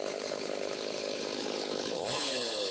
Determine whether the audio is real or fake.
fake